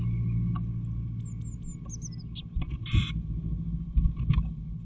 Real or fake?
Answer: real